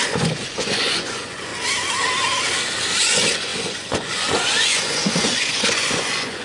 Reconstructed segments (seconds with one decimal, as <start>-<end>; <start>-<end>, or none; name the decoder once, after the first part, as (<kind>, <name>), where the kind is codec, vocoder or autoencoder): 0.0-1.5 (vocoder, Vocos); 3.0-6.4